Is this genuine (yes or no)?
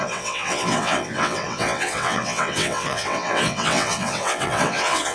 no